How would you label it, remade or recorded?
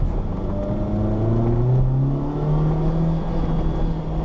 recorded